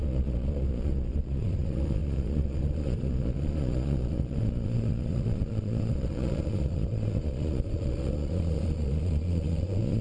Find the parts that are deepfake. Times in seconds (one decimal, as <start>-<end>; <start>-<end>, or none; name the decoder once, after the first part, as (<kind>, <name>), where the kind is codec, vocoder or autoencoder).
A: 0.0-10.0 (vocoder, Vocos)